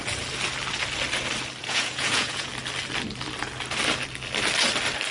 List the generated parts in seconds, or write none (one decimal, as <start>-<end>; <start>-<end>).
1.6-2.5